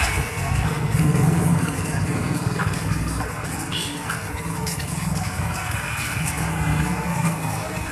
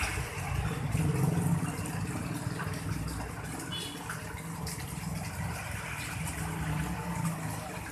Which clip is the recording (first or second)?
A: second